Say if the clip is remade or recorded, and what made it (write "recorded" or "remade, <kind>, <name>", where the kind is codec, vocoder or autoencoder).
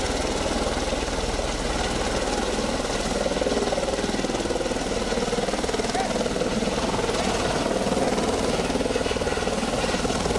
recorded